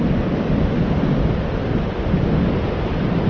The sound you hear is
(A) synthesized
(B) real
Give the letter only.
B